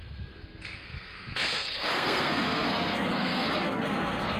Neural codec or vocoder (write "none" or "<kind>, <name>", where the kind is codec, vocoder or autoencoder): codec, SNAC